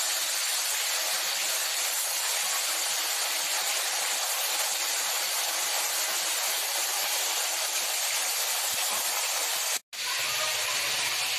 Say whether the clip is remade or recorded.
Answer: recorded